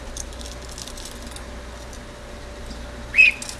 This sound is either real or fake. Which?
real